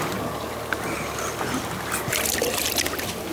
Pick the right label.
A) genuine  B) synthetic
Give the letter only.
A